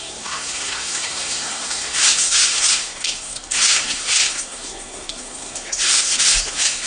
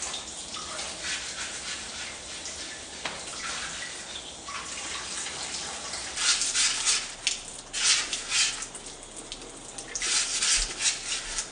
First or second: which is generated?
first